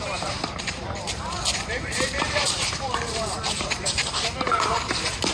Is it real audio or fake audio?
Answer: fake